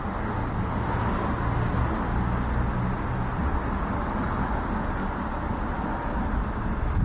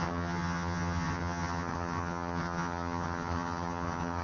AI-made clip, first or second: second